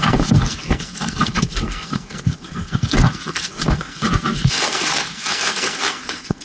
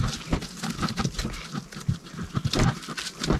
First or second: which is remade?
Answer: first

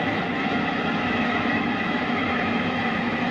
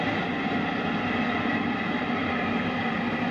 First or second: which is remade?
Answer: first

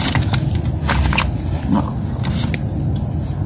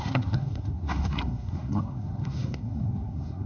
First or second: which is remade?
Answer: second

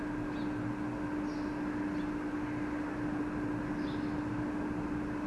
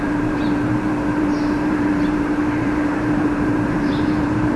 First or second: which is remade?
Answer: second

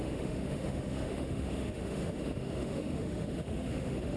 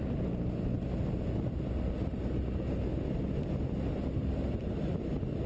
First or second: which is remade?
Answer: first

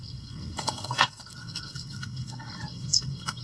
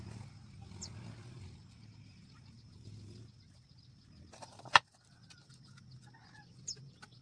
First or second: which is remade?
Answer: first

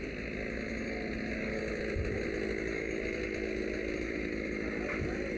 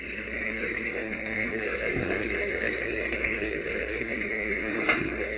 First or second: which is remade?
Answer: second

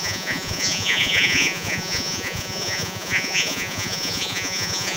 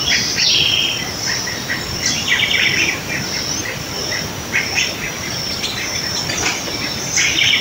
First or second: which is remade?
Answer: first